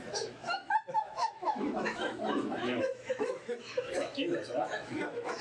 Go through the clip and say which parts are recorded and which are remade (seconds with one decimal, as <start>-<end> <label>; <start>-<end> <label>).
0.0-5.4 remade